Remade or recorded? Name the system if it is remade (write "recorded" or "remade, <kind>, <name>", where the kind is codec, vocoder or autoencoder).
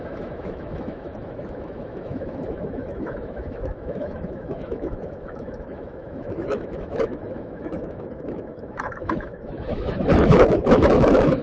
remade, autoencoder, DAC-VAE